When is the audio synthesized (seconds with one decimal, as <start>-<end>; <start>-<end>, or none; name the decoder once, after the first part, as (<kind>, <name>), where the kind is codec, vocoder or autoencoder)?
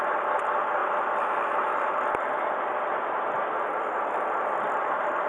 none